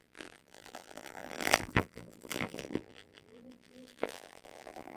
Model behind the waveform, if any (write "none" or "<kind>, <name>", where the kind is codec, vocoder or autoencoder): vocoder, BigVGAN v2